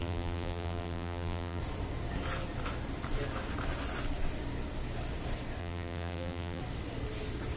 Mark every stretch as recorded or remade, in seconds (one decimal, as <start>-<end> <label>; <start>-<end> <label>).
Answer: 0.0-1.6 remade; 1.6-5.6 recorded; 5.6-6.6 remade; 6.6-7.6 recorded